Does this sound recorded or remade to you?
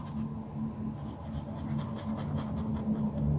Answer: recorded